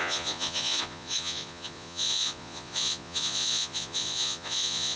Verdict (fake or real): fake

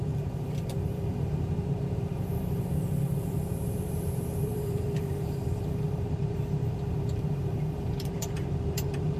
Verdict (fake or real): fake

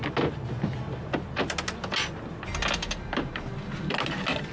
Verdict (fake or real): real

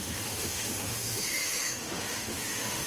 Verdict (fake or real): fake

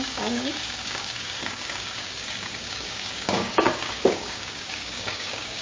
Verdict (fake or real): fake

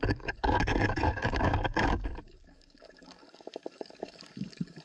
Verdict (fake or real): fake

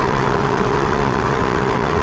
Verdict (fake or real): fake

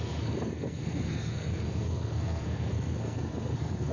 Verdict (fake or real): fake